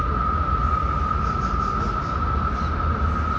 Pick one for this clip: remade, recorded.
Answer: recorded